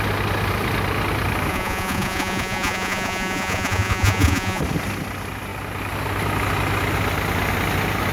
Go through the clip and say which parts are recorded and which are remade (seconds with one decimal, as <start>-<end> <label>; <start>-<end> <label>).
0.0-1.5 recorded; 1.5-4.6 remade; 4.6-8.1 recorded